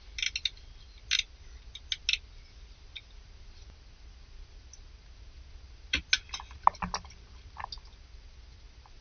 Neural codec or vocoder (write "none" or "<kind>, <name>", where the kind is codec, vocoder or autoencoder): none